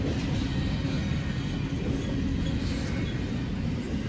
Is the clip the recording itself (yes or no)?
yes